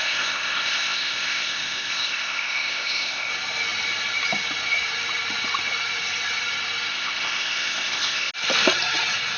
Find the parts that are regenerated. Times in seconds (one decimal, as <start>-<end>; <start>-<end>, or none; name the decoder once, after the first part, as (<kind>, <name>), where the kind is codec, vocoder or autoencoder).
0.0-3.3 (codec, ZipCodec); 6.9-8.3